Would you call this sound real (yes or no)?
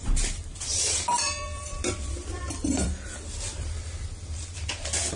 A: no